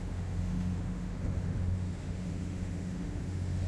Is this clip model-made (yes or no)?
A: yes